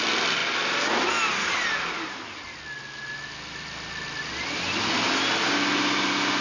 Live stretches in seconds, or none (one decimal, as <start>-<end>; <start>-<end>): 0.0-6.4